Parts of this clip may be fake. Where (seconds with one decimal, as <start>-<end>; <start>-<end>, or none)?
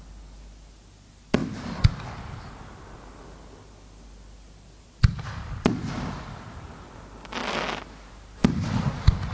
none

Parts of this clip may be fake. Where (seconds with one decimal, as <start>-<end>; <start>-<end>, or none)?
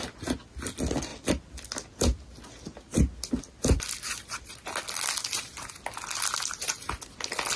none